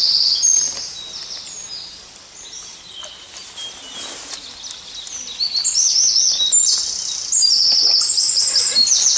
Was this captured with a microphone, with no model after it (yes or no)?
yes